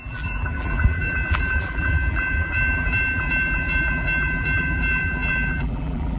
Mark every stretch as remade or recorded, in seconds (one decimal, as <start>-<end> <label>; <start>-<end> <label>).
0.0-6.2 remade